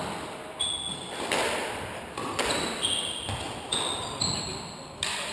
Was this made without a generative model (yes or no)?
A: yes